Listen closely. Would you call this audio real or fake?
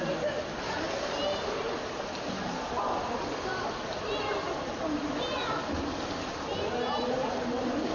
real